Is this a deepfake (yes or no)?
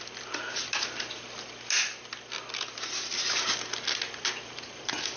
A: no